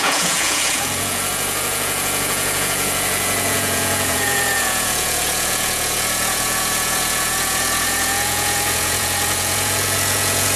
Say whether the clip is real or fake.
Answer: fake